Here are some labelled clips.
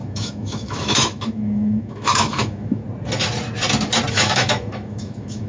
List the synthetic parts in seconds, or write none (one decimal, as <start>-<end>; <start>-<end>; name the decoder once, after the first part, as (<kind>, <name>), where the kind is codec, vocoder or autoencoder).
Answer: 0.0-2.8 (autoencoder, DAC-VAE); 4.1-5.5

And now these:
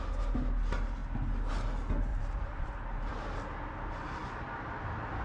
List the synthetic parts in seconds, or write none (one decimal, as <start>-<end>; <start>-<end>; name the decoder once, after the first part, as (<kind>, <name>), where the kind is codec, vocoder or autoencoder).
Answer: 2.1-3.1 (vocoder, BigVGAN v2)

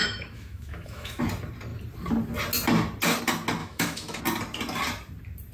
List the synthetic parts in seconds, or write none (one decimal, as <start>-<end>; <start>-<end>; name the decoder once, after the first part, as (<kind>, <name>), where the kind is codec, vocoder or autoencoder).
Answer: 0.0-1.2 (autoencoder, DAC-VAE); 3.6-4.2